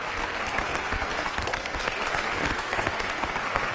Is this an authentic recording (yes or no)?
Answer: no